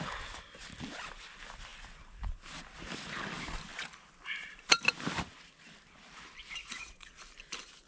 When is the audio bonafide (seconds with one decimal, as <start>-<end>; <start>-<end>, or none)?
0.0-6.6; 7.2-7.9